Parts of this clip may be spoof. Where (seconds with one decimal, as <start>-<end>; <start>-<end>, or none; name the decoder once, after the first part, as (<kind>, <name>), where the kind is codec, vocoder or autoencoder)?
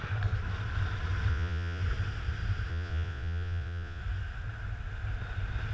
1.3-1.8 (vocoder, Vocos); 2.7-4.0